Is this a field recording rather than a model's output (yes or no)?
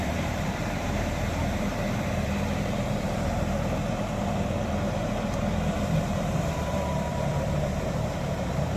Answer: no